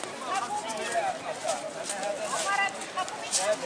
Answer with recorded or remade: recorded